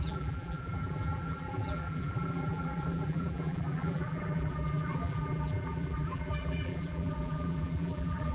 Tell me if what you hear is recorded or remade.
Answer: remade